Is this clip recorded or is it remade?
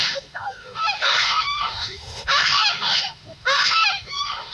remade